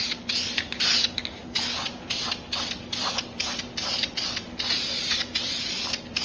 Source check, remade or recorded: recorded